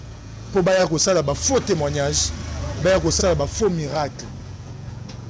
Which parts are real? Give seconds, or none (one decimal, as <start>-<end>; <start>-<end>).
0.8-2.6; 3.2-4.4